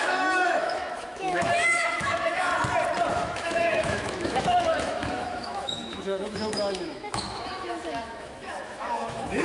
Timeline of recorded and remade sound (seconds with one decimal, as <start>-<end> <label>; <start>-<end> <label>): 0.0-2.5 remade; 2.5-3.1 recorded; 3.1-9.4 remade